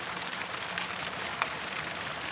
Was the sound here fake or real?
real